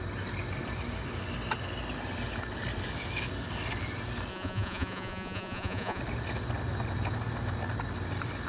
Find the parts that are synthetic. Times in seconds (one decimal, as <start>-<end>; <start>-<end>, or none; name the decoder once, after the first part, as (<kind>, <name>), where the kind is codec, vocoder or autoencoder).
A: 4.3-6.0 (vocoder, Vocos)